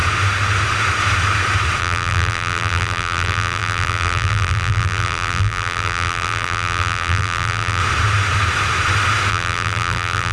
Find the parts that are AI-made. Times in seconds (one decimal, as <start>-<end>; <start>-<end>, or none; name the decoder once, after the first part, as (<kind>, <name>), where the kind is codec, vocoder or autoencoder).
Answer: 1.8-7.8 (vocoder, BigVGAN v2); 9.3-10.3